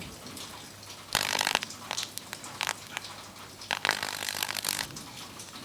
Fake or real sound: real